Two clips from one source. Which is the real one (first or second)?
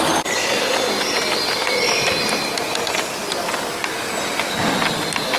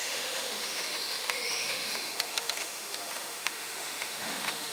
first